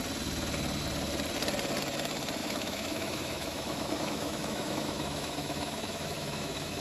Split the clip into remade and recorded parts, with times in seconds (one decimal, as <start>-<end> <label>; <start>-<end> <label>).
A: 0.0-2.4 recorded; 2.4-6.8 remade